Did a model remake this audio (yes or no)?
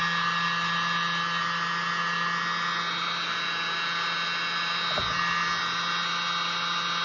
no